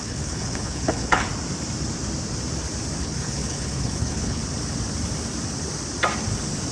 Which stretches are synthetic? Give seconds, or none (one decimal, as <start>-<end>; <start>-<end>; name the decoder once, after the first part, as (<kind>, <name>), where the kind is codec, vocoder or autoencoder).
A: 0.0-1.3 (codec, HILCodec); 3.0-4.4